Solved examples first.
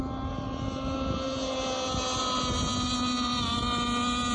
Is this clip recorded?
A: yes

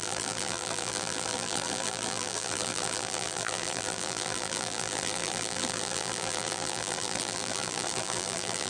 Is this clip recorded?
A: no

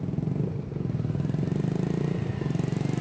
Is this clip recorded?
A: yes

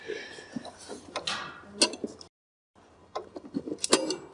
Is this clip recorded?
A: yes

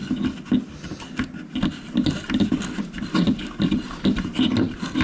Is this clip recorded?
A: yes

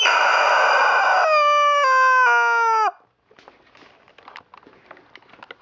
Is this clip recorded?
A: yes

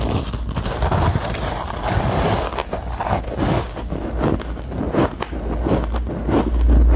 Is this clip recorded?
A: yes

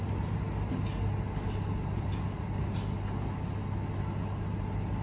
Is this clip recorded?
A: yes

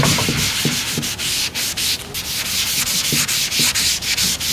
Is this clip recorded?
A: yes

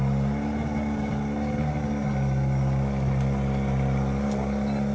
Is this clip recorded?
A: yes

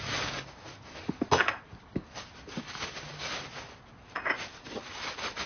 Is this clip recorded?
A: yes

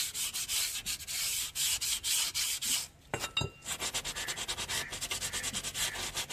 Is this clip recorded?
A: yes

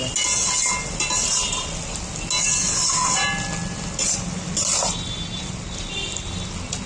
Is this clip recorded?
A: yes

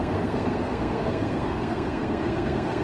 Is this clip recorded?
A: no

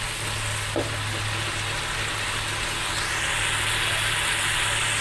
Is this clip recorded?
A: yes